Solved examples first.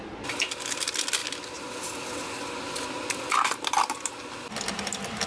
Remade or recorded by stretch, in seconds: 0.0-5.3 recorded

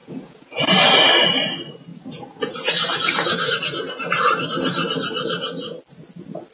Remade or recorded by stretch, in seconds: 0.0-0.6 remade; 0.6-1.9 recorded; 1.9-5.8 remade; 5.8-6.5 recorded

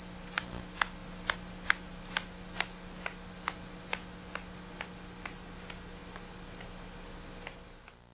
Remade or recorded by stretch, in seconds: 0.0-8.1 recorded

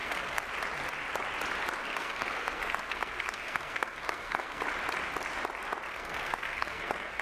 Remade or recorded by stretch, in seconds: 0.0-0.5 remade; 0.5-1.8 recorded; 1.8-4.6 remade; 4.6-5.9 recorded; 5.9-7.2 remade

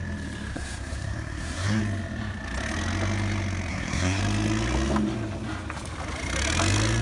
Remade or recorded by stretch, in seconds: 0.0-0.5 recorded; 0.5-1.8 remade; 1.8-3.7 recorded; 3.7-4.2 remade; 4.2-7.0 recorded